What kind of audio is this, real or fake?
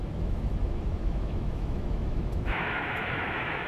fake